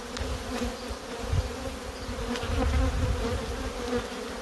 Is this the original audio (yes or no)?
yes